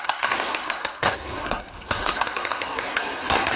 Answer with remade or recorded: remade